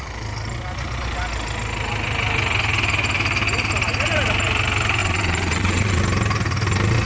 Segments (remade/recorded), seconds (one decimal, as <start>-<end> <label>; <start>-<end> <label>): 0.0-5.0 recorded; 5.0-6.0 remade; 6.0-7.0 recorded